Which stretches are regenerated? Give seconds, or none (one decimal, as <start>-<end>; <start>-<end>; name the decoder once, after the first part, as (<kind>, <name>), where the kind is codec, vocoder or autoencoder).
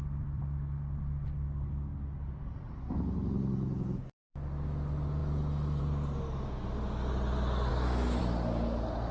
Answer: 5.2-5.8 (autoencoder, DAC-VAE); 7.7-8.2